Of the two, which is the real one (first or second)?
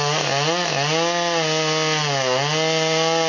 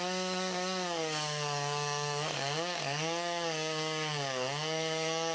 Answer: first